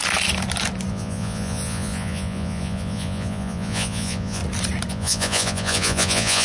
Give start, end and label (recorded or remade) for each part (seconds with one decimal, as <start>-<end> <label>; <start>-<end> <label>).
0.0-0.9 recorded; 0.9-4.4 remade; 4.4-4.9 recorded; 4.9-6.4 remade